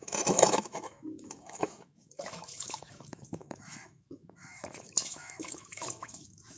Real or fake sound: fake